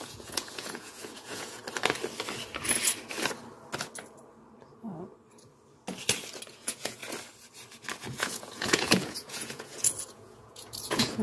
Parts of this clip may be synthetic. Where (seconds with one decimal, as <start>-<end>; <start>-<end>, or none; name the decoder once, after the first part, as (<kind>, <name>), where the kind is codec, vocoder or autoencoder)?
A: 0.0-1.6 (vocoder, Vocos); 6.5-7.0; 8.1-11.2